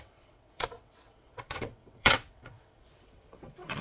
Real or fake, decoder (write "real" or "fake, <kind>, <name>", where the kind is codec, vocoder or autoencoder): fake, vocoder, WaveNeXt